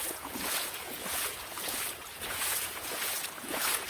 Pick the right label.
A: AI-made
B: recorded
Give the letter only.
A